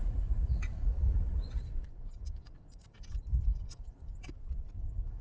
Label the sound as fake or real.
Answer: fake